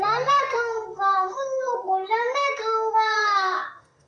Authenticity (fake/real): fake